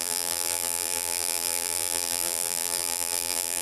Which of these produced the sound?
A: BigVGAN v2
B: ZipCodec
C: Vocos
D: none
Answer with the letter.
A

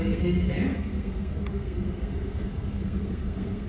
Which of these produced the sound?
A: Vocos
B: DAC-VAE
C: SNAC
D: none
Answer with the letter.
C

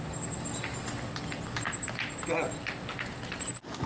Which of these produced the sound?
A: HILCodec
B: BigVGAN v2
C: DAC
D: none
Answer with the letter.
D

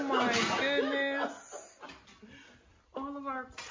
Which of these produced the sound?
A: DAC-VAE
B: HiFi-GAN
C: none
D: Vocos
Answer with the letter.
C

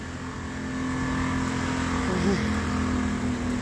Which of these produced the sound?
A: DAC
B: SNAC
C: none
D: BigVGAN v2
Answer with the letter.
C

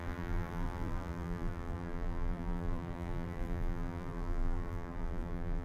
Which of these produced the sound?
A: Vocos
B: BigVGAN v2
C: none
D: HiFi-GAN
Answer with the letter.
B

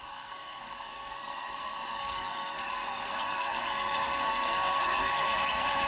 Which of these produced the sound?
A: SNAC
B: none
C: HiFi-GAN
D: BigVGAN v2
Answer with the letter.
A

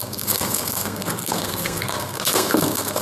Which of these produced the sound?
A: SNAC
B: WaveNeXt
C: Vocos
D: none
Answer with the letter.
A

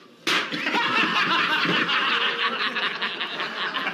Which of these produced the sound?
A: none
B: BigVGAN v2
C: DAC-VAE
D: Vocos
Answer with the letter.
A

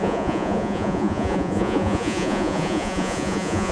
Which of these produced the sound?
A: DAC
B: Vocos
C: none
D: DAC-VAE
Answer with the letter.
B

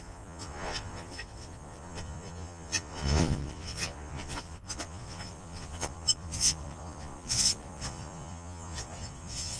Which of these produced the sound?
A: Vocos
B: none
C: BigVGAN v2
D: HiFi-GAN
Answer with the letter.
A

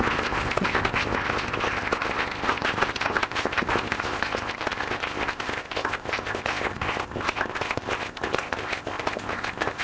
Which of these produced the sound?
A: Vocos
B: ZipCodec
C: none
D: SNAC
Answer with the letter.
B